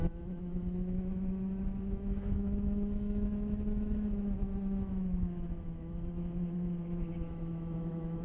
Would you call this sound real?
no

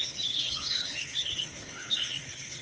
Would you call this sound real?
no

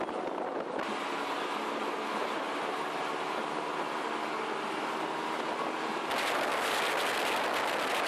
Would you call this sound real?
yes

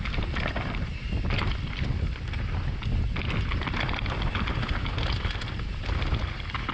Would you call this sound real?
yes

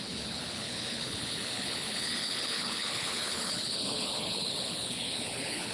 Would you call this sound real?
no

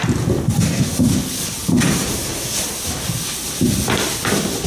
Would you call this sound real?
yes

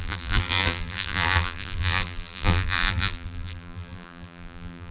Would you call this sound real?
no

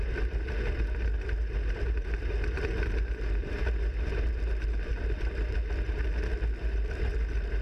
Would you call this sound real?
yes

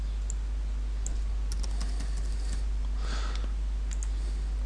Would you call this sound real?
yes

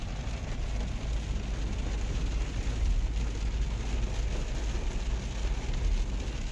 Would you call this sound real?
yes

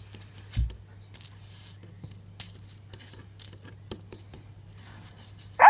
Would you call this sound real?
yes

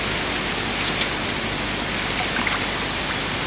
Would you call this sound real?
yes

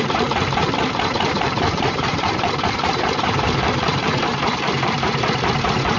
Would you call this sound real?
no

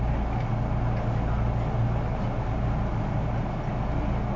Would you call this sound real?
yes